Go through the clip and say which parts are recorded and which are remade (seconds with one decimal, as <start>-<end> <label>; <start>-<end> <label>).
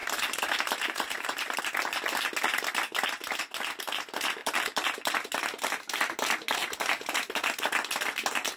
0.0-1.6 remade; 1.6-4.4 recorded; 4.4-5.1 remade; 5.1-6.6 recorded; 6.6-7.1 remade; 7.1-8.6 recorded